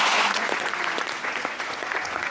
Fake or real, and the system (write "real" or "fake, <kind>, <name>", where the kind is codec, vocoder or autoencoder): fake, vocoder, Vocos